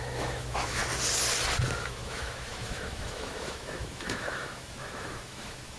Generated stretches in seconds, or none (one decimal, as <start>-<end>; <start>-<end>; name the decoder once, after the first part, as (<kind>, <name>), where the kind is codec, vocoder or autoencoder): 0.0-0.8 (autoencoder, DAC-VAE); 1.8-5.8